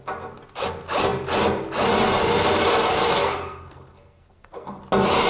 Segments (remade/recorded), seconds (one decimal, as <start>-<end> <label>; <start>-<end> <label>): 0.0-3.2 recorded; 3.2-4.8 remade; 4.8-5.3 recorded